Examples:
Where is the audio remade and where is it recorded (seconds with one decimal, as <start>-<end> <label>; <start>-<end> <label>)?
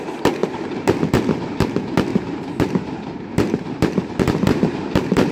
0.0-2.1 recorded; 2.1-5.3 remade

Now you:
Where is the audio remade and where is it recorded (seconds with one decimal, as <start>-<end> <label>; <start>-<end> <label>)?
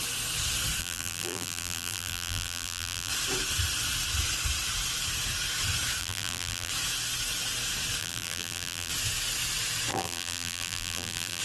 0.0-0.8 recorded; 0.8-3.1 remade; 3.1-6.0 recorded; 6.0-6.7 remade; 6.7-8.0 recorded; 8.0-8.9 remade; 8.9-9.9 recorded; 9.9-11.4 remade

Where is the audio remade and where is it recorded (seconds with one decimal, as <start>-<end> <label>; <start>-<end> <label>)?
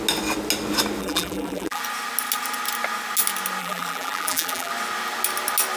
0.0-1.0 recorded; 1.0-1.8 remade; 1.8-3.6 recorded; 3.6-4.7 remade; 4.7-5.8 recorded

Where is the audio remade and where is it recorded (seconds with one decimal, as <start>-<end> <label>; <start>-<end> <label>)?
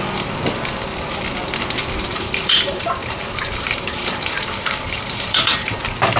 0.0-2.1 recorded; 2.1-5.8 remade; 5.8-6.2 recorded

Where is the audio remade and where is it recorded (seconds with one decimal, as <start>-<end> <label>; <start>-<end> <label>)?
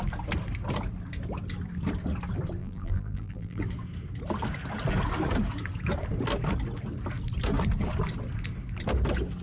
0.0-2.6 recorded; 2.6-3.6 remade; 3.6-9.4 recorded